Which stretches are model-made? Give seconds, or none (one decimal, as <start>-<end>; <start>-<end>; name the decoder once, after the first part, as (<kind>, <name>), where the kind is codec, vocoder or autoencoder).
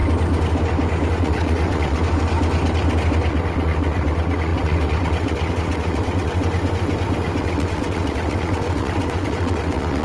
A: 1.1-2.0 (vocoder, WaveNeXt); 3.3-6.4; 7.4-10.0